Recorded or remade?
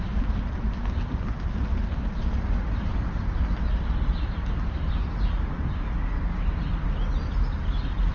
recorded